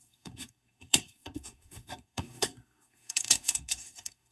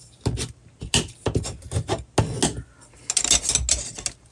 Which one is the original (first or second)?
second